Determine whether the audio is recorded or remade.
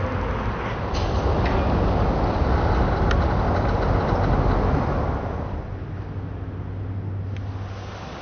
recorded